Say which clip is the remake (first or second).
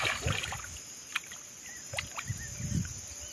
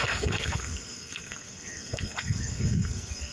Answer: second